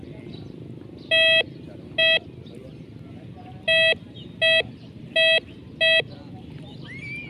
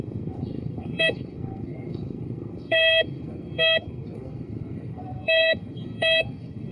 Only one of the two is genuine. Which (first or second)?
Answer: first